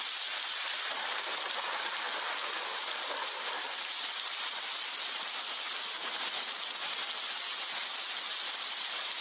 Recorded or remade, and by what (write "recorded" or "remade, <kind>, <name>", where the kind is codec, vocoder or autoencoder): recorded